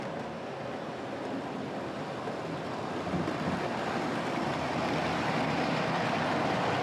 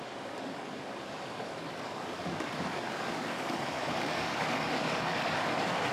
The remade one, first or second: second